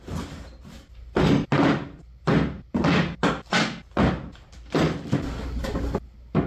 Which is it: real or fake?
real